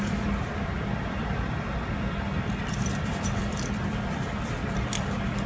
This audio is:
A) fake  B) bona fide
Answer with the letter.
A